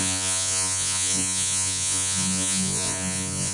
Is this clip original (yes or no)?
no